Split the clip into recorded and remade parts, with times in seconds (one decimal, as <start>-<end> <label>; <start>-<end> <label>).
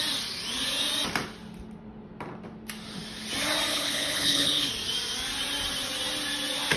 0.0-3.7 recorded; 3.7-4.7 remade; 4.7-6.8 recorded